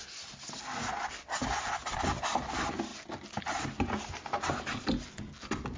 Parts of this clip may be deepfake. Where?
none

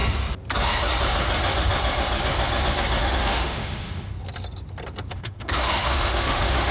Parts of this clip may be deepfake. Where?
3.0-4.1 (autoencoder, DAC-VAE); 5.1-6.7

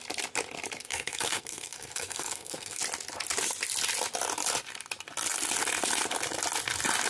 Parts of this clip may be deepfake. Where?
0.8-2.8 (codec, SNAC)

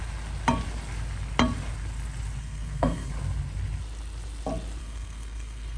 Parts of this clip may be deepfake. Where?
2.4-3.1 (codec, SNAC); 4.8-5.8

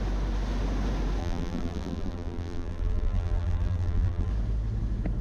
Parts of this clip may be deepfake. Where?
1.2-4.3 (vocoder, BigVGAN v2)

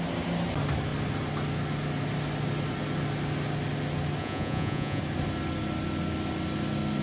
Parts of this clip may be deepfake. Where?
4.2-5.0 (vocoder, Vocos)

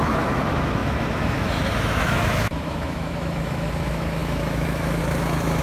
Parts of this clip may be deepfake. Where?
0.0-5.6 (autoencoder, DAC-VAE)

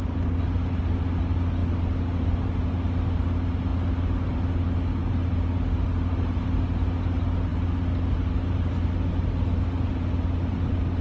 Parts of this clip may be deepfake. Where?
none